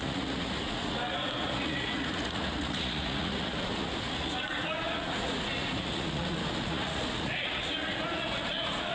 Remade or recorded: remade